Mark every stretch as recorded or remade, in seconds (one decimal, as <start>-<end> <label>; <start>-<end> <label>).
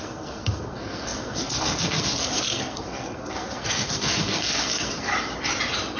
0.0-5.1 remade; 5.1-6.0 recorded